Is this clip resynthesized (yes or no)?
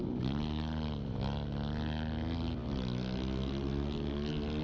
no